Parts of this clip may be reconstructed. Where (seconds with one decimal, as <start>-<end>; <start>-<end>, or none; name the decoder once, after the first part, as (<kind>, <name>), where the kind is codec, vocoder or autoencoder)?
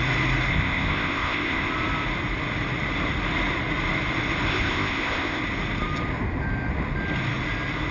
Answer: 0.5-1.7 (codec, ZipCodec); 4.5-5.4